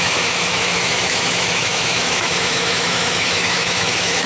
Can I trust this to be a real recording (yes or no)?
no